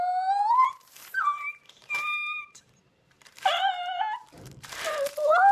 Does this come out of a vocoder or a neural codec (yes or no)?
yes